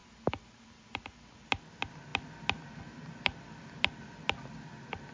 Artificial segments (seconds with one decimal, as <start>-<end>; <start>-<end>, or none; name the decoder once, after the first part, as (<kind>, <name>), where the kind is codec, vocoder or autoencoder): none